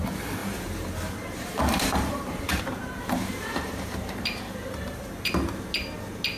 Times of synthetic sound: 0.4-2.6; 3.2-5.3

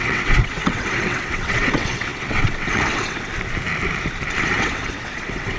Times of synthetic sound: 0.0-3.3; 4.4-5.6

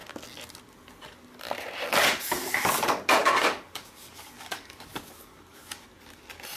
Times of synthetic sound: 3.2-5.8